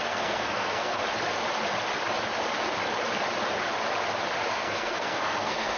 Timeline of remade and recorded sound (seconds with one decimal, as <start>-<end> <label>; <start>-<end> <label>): 0.0-1.0 remade; 1.0-4.5 recorded; 4.5-5.8 remade